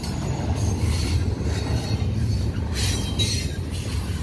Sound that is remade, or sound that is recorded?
recorded